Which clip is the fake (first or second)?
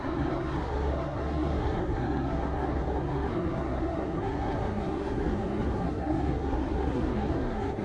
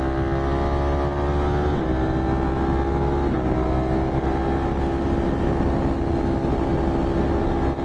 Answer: first